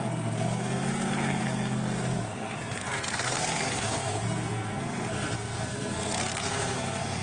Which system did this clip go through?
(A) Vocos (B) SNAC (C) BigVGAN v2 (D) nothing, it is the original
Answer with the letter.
B